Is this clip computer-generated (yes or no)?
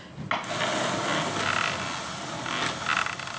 no